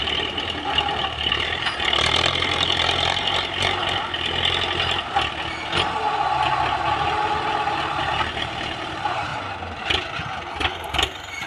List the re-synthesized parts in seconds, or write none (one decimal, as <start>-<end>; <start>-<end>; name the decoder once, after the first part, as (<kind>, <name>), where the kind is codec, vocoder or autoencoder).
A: 0.0-3.8 (vocoder, BigVGAN v2); 8.0-9.3; 10.7-11.5